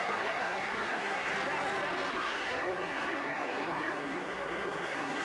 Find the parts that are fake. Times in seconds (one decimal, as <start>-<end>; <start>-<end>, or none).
0.0-1.3; 2.1-5.2

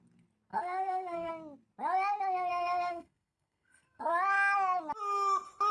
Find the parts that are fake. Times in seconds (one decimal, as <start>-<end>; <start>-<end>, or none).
0.5-1.3; 2.5-4.1

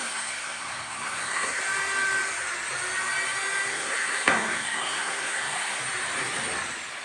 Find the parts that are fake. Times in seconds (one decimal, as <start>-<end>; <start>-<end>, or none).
0.0-1.6; 3.7-5.8